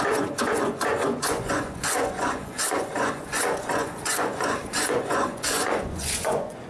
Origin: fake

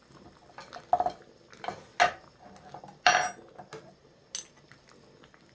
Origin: real